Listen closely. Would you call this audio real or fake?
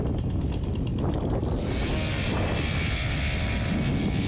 real